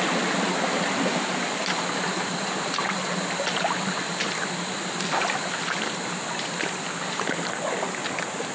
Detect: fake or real real